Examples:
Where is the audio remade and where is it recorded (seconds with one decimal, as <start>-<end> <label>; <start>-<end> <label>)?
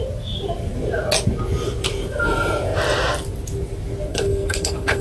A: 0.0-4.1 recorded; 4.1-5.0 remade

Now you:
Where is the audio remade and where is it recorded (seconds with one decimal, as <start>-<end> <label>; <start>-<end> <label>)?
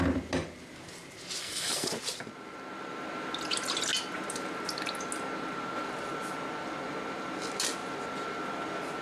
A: 0.0-1.4 recorded; 1.4-1.9 remade; 1.9-9.0 recorded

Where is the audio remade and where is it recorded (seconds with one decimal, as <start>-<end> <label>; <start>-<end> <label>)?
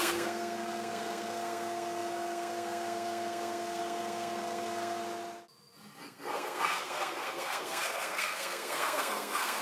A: 0.0-5.0 remade; 5.0-6.0 recorded; 6.0-9.6 remade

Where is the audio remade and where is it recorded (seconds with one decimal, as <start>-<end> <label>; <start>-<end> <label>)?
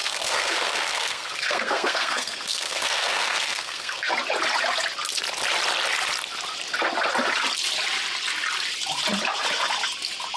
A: 0.0-4.1 remade; 4.1-10.4 recorded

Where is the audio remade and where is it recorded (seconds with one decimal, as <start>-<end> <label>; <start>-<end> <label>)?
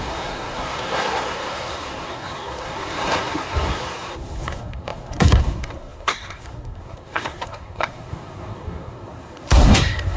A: 0.0-10.2 remade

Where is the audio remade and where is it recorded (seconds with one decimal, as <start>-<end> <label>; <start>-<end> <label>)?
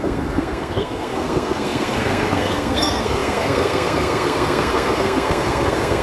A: 0.0-6.0 remade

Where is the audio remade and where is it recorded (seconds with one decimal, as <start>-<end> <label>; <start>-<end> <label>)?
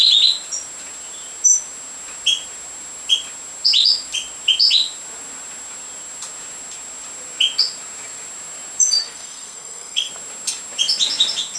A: 0.0-9.0 recorded; 9.0-10.1 remade; 10.1-11.6 recorded